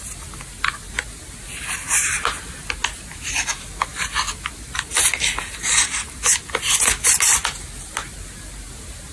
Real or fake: real